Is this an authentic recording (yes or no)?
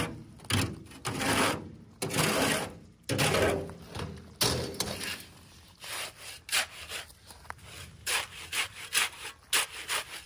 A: yes